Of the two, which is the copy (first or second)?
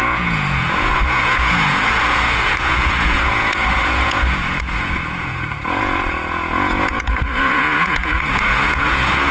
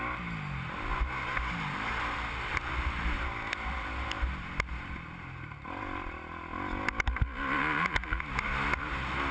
first